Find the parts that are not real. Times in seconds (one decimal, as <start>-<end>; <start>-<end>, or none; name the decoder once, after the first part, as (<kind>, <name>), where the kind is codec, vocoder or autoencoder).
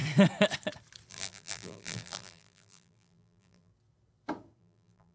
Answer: 1.1-3.7 (vocoder, BigVGAN v2); 4.6-5.1